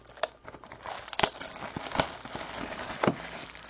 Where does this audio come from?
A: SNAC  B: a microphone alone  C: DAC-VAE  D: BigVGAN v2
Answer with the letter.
B